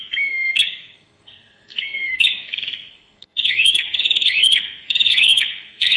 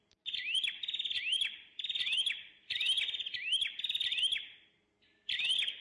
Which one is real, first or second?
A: second